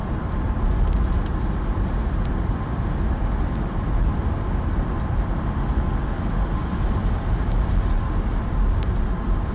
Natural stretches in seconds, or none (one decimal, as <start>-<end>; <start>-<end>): 6.6-8.4